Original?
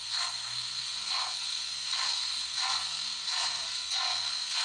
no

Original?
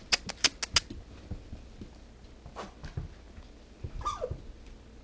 yes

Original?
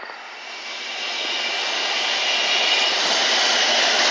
yes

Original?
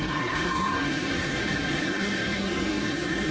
no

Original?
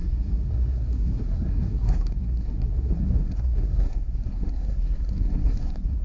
no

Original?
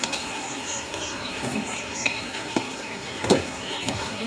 no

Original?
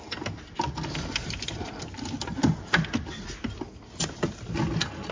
yes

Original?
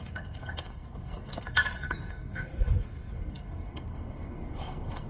no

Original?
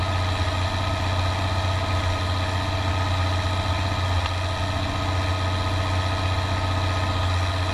yes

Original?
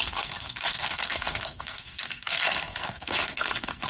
no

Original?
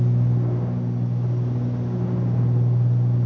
yes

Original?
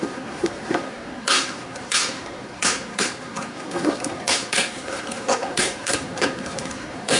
no